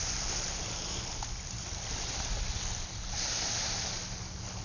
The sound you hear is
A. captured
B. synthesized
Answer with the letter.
A